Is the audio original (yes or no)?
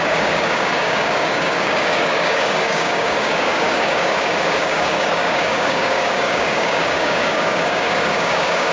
no